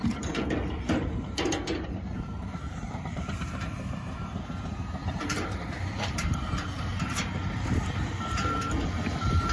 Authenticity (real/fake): fake